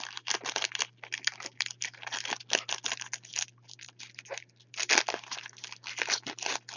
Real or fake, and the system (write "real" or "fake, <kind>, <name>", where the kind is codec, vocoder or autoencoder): real